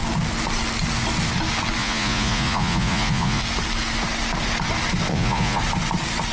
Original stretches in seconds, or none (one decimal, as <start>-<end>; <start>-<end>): 0.0-1.8; 3.4-5.1; 5.6-6.3